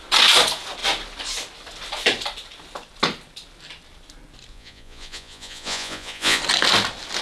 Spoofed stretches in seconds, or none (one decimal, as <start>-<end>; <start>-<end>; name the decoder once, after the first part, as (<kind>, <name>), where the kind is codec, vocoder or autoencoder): 4.5-6.4 (vocoder, Vocos)